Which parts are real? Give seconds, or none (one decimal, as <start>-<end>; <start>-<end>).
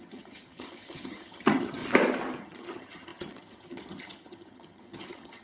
1.8-2.4